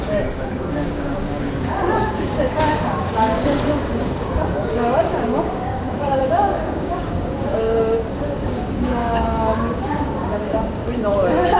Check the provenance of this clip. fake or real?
fake